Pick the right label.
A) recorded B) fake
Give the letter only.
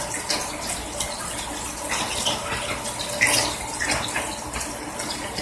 A